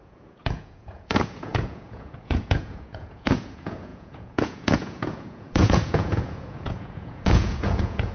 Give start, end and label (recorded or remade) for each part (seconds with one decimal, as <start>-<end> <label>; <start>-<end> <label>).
0.0-8.1 remade